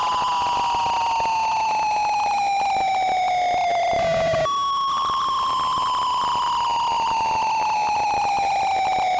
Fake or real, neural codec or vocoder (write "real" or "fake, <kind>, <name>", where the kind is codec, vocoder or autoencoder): real